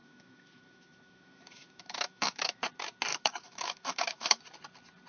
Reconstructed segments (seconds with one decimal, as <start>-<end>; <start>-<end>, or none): 0.0-2.6; 3.1-4.4